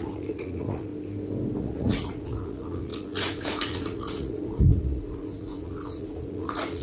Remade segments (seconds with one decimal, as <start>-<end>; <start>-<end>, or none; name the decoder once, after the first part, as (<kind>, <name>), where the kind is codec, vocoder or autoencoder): 0.0-0.9 (vocoder, Vocos); 1.6-6.8